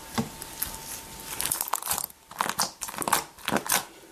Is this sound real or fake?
real